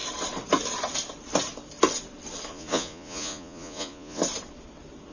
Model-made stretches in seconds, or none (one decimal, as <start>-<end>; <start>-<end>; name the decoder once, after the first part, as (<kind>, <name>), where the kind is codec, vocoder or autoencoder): 2.5-4.2 (vocoder, Vocos)